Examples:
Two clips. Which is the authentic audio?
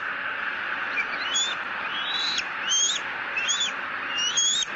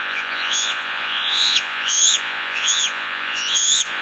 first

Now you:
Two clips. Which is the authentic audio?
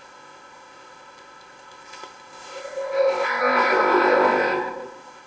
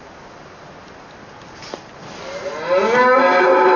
second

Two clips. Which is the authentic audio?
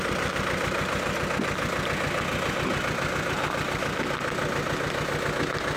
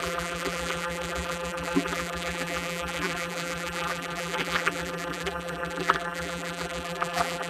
first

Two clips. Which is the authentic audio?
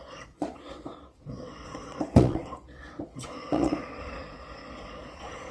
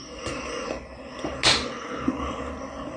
second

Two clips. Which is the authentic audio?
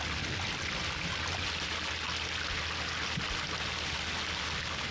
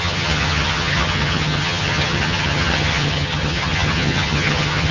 first